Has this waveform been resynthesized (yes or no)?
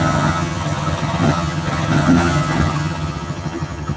yes